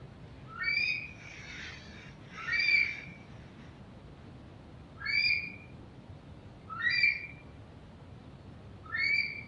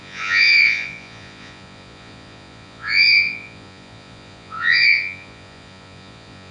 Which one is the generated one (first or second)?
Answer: second